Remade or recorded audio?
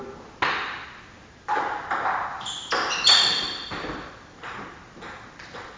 recorded